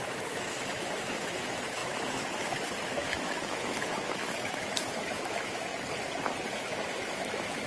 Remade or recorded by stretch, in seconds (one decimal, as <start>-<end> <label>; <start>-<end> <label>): 0.0-5.7 remade; 5.7-6.5 recorded; 6.5-7.7 remade